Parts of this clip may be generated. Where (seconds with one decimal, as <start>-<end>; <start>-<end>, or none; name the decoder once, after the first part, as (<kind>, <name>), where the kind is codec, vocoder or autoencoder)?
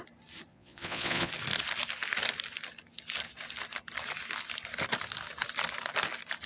0.5-1.3 (vocoder, Vocos)